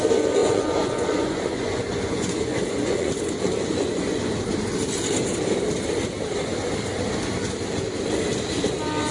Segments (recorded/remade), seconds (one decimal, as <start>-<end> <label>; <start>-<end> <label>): 0.0-0.4 recorded; 0.4-4.3 remade; 4.3-9.1 recorded